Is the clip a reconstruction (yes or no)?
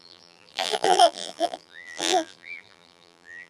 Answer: yes